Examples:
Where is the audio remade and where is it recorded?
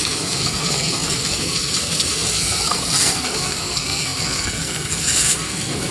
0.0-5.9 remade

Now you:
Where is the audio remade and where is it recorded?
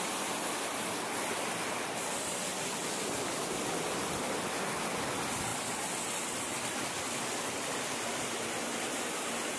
0.0-9.6 recorded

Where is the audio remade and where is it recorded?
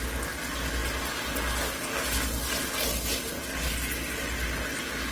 0.0-5.1 recorded